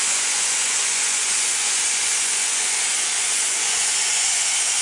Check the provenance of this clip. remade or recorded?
remade